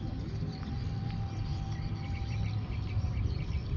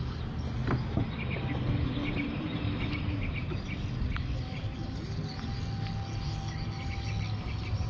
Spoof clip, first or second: first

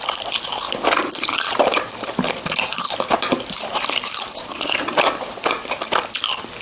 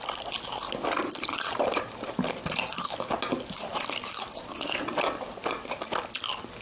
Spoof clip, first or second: first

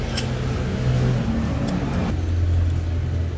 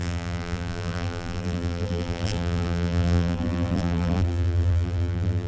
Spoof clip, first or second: second